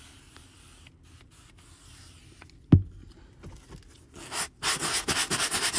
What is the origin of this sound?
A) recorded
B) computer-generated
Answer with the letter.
A